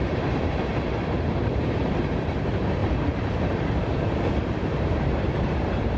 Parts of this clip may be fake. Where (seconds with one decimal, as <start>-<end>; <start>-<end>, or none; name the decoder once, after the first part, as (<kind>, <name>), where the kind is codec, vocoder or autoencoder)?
0.0-6.0 (vocoder, BigVGAN v2)